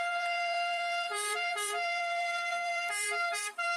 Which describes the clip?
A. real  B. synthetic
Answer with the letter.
B